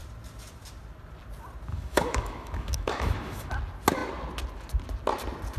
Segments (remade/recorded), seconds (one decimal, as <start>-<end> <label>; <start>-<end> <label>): 0.0-1.7 recorded; 1.7-3.5 remade; 3.5-5.6 recorded